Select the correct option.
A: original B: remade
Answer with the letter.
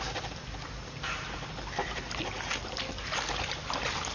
A